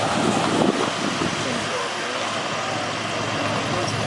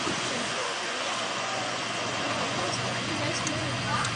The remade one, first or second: second